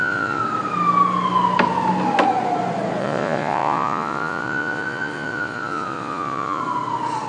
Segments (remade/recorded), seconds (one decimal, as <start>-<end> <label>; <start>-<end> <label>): 0.0-0.4 remade; 0.4-3.0 recorded; 3.0-6.6 remade; 6.6-7.3 recorded